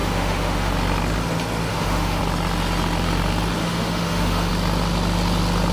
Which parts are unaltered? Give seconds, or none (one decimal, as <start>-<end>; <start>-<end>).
0.7-1.7; 2.2-3.6; 4.5-5.7